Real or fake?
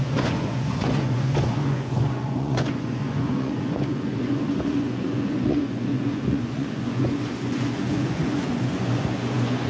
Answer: fake